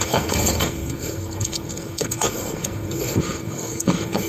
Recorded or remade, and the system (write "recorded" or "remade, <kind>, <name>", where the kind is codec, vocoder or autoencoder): remade, codec, SNAC